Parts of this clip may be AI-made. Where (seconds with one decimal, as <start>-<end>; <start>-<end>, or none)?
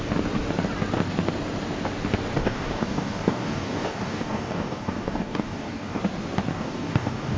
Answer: 2.4-6.0; 6.5-7.4